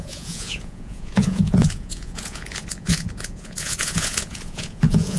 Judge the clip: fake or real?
fake